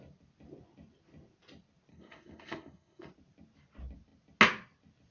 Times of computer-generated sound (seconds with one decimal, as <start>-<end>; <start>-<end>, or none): 1.9-3.1